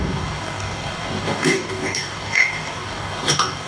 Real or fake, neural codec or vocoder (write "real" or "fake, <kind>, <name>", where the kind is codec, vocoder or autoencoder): fake, codec, DAC